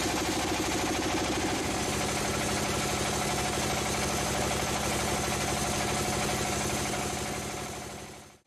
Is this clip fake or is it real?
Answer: real